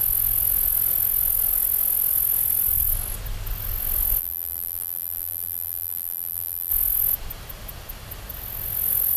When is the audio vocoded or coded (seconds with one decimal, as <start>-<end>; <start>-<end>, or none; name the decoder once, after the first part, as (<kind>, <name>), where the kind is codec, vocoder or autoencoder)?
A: 4.2-6.7 (vocoder, BigVGAN v2)